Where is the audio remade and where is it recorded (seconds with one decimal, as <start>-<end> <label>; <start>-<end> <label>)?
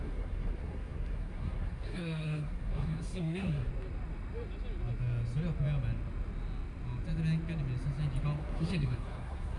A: 0.0-3.7 remade; 3.7-8.4 recorded; 8.4-9.6 remade